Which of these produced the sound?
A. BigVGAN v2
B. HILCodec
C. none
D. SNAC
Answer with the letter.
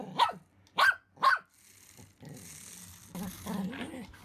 C